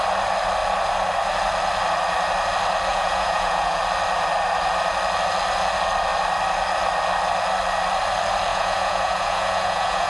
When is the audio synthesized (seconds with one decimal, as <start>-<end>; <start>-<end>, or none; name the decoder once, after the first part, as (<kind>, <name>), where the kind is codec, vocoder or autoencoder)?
2.9-3.8 (vocoder, Vocos); 8.5-10.1